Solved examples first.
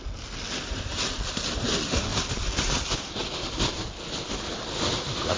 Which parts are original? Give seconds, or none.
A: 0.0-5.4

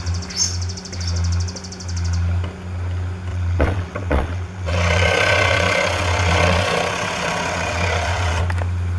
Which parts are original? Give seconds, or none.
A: 0.0-3.3; 8.4-9.0